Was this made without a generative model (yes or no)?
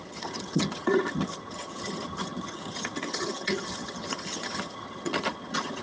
no